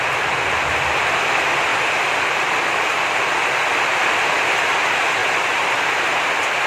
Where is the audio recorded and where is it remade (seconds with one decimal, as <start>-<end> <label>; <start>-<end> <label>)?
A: 0.0-1.7 recorded; 1.7-2.7 remade; 2.7-5.2 recorded; 5.2-5.8 remade; 5.8-6.7 recorded